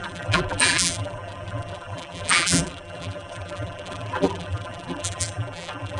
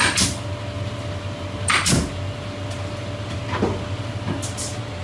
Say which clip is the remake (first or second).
first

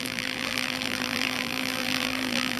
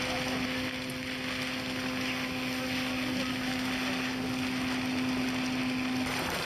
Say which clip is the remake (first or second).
first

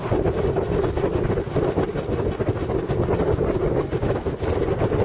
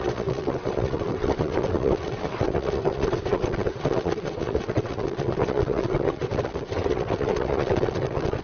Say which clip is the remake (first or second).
second